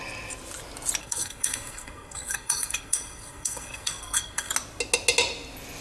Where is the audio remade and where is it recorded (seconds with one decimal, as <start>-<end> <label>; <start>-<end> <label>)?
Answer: 0.0-1.0 recorded; 1.0-4.5 remade; 4.5-5.8 recorded